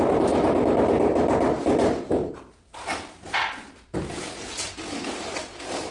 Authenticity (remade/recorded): recorded